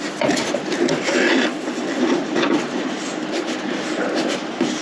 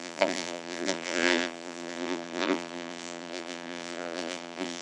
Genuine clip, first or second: first